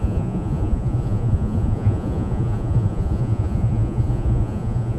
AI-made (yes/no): yes